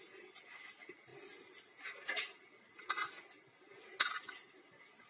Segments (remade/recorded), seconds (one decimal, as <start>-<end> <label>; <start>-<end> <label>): 0.0-1.1 remade; 1.1-4.2 recorded; 4.2-5.1 remade